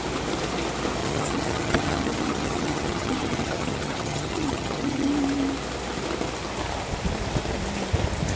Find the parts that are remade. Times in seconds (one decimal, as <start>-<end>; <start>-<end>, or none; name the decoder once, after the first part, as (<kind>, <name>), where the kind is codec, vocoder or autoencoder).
1.0-5.1 (vocoder, HiFi-GAN)